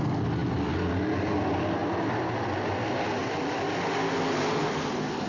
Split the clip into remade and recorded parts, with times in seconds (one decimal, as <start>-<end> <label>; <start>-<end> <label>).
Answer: 0.0-5.3 recorded